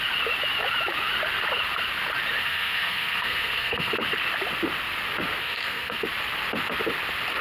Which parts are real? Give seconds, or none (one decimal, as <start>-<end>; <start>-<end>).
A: 0.0-2.4; 3.9-5.4; 6.0-7.4